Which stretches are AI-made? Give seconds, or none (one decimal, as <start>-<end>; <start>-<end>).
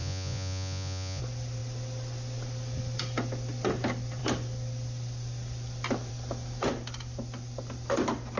0.0-1.2